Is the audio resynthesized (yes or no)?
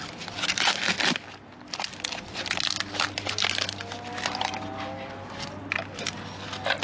no